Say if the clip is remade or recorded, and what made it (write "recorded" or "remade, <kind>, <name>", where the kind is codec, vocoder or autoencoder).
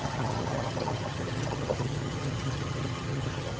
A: remade, vocoder, HiFi-GAN